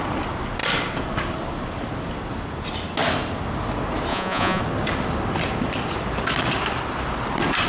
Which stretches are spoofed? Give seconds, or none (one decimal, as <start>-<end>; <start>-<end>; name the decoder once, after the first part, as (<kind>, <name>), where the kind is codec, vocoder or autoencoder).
4.1-4.6 (vocoder, Vocos)